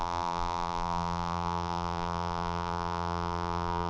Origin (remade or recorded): remade